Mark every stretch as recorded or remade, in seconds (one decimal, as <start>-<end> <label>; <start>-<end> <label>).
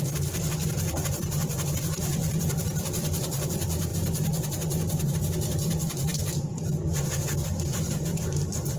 0.0-3.9 remade; 3.9-5.1 recorded; 5.1-8.8 remade